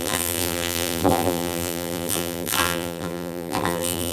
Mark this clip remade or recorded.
remade